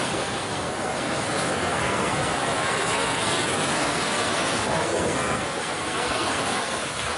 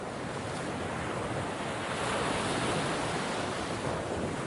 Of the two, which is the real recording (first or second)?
second